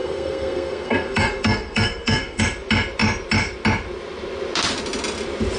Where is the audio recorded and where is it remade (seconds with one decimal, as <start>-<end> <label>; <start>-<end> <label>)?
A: 0.0-2.4 remade; 2.4-5.6 recorded